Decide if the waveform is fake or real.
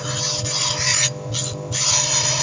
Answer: real